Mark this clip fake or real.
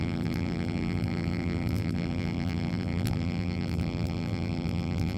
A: fake